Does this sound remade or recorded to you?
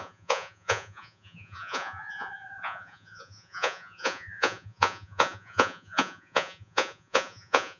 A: remade